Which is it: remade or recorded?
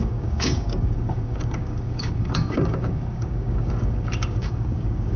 remade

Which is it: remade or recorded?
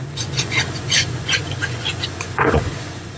remade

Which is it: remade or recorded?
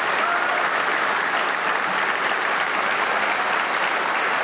recorded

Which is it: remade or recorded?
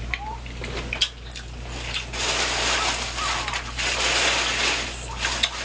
recorded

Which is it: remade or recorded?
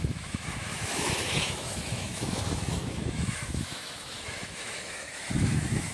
remade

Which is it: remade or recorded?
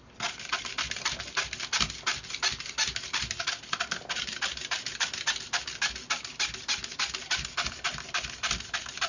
recorded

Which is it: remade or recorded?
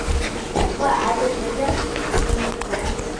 recorded